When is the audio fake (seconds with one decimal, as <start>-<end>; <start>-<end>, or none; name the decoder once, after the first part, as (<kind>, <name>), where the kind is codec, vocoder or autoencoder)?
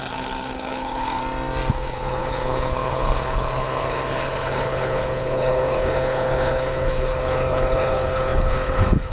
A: 0.0-1.2 (codec, HILCodec); 1.7-9.1